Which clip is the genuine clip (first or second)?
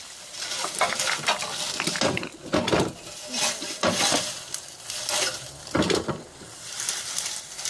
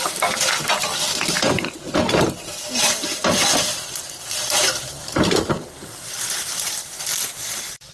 first